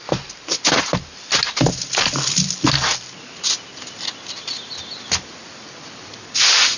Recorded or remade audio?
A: recorded